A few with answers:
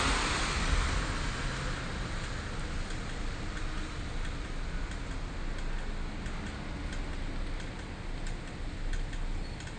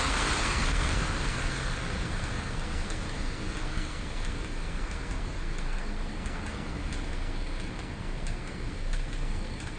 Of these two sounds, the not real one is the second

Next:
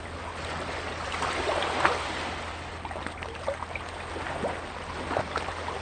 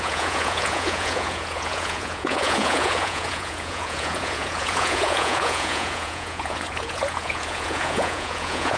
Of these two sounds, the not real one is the second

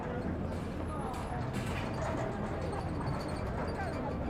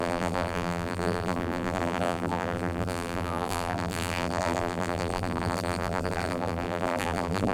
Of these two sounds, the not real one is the second